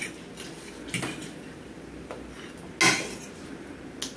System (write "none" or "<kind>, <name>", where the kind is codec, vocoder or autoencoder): none